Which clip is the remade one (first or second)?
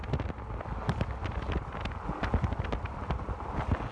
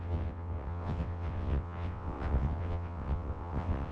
second